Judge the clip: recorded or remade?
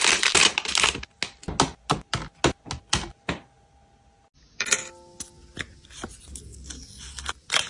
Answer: recorded